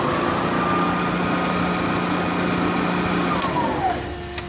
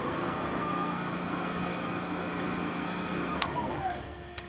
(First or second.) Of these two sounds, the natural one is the first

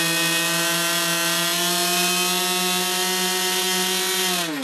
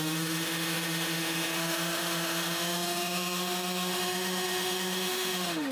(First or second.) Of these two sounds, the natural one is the first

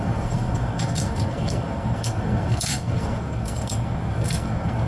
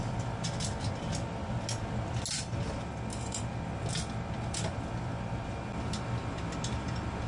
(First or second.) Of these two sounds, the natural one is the second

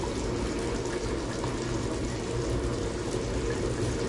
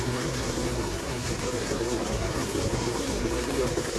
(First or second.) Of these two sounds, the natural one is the first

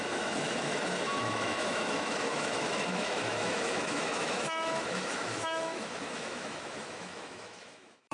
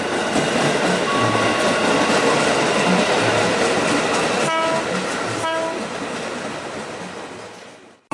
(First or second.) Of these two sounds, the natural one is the second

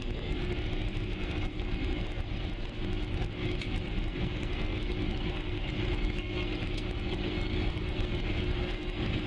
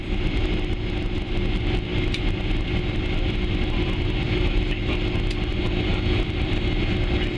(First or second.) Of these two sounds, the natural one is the second